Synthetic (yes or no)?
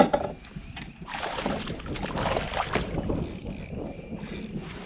no